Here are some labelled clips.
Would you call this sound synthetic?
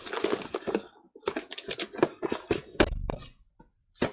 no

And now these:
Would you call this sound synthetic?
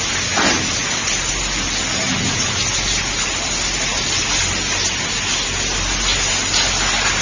no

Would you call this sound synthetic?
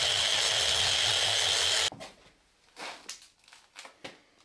no